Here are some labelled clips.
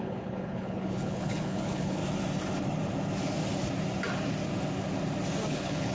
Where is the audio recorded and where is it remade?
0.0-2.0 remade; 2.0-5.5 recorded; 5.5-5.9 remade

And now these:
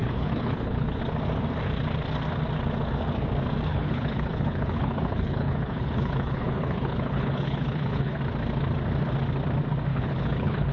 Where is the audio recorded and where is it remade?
0.0-1.0 remade; 1.0-3.7 recorded; 3.7-8.2 remade; 8.2-9.9 recorded; 9.9-10.7 remade

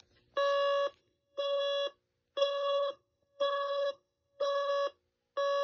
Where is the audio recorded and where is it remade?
0.0-1.0 recorded; 1.0-1.6 remade; 1.6-2.4 recorded; 2.4-4.7 remade; 4.7-5.6 recorded

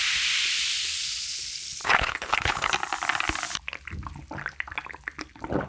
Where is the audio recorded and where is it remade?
0.0-1.8 recorded; 1.8-2.7 remade; 2.7-5.7 recorded

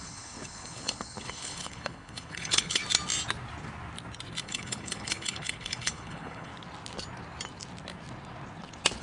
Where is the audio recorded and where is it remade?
0.0-2.8 remade; 2.8-4.4 recorded; 4.4-6.5 remade; 6.5-9.0 recorded

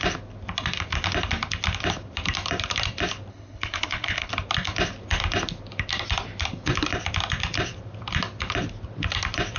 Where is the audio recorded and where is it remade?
0.0-3.3 recorded; 3.3-4.3 remade; 4.3-9.6 recorded

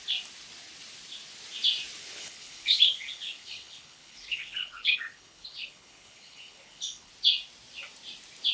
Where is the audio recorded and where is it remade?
0.0-2.0 recorded; 2.0-7.1 remade; 7.1-8.5 recorded